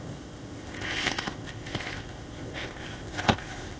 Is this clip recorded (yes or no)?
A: no